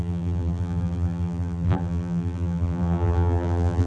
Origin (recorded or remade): remade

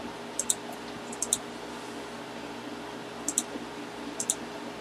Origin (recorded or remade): recorded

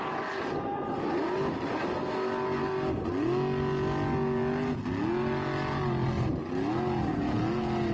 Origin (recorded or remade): recorded